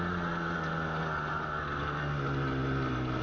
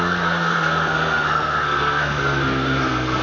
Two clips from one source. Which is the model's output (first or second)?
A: second